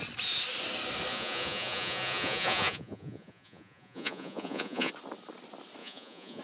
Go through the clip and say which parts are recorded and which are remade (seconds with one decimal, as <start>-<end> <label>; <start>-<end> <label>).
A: 0.0-1.1 recorded; 1.1-4.9 remade; 4.9-5.8 recorded; 5.8-6.4 remade